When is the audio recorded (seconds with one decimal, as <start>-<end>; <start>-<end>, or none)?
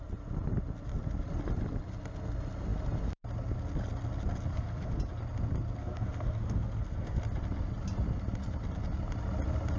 0.0-4.5; 5.0-5.8; 7.2-9.8